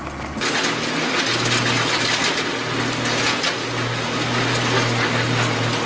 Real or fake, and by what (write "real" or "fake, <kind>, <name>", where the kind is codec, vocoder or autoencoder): real